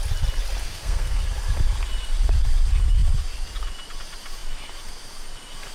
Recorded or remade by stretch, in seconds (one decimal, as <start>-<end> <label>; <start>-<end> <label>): 0.0-0.6 recorded; 0.6-1.2 remade; 1.2-5.7 recorded